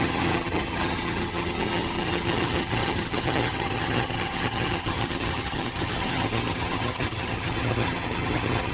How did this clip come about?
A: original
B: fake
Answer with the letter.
B